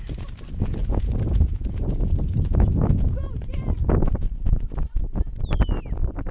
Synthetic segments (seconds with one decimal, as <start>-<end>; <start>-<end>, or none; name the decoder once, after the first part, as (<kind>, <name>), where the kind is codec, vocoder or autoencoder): 0.8-3.6 (vocoder, Vocos)